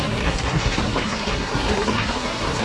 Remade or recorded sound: remade